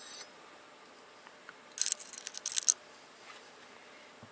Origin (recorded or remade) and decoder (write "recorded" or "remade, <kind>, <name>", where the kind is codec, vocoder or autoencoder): recorded